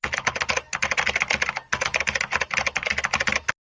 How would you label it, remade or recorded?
recorded